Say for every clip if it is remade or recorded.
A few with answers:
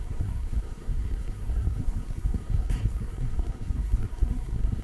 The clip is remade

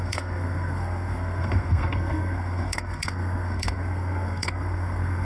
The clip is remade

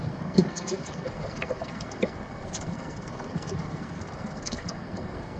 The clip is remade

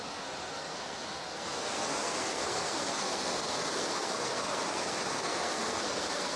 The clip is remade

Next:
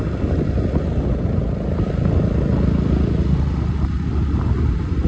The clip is recorded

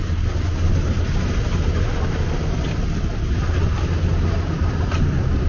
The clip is recorded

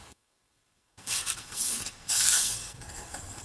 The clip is remade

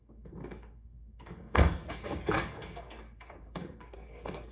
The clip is remade